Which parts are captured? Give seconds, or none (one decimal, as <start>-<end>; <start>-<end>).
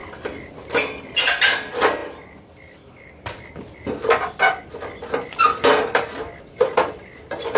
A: 0.0-1.4; 2.0-6.4